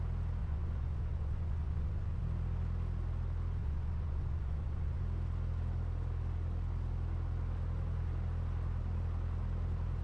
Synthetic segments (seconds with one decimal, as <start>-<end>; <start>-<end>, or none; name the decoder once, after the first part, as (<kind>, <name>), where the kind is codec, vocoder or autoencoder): 0.4-2.2 (vocoder, Vocos); 3.6-5.0